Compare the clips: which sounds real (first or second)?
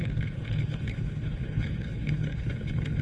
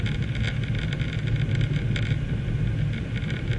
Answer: second